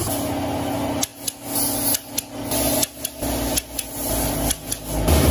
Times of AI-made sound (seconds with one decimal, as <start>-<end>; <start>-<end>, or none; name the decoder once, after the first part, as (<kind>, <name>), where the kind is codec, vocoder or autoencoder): none